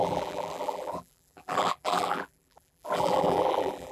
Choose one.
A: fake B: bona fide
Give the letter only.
A